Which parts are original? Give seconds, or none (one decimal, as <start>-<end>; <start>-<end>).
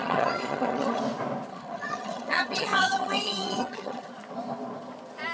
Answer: 1.0-1.5; 4.1-5.3